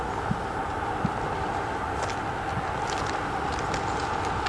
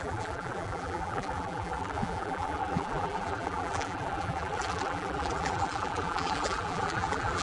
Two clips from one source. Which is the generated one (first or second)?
second